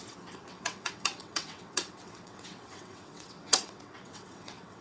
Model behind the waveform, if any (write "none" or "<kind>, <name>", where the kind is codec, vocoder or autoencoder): vocoder, WaveNeXt